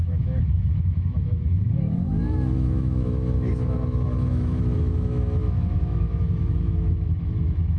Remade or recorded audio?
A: remade